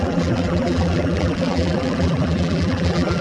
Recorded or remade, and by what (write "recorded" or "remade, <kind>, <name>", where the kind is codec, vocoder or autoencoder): remade, vocoder, BigVGAN v2